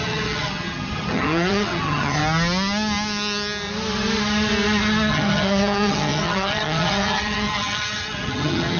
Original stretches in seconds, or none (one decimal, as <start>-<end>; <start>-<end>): 2.2-5.1